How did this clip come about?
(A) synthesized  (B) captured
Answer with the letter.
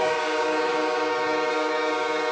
A